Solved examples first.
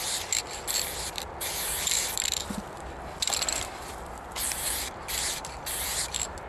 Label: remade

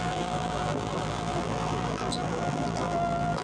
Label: remade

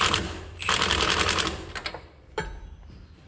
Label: remade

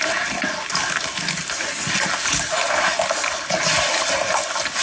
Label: recorded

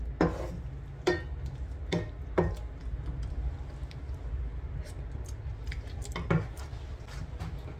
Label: recorded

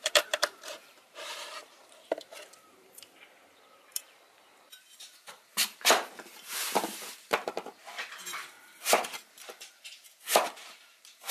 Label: remade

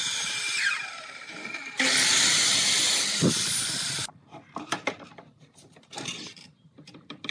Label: remade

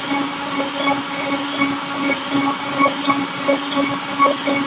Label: recorded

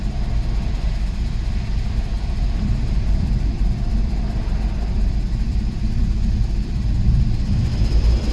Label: remade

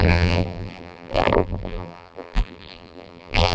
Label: remade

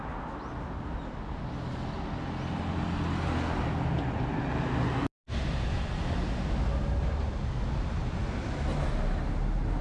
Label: recorded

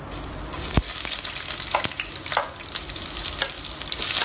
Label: remade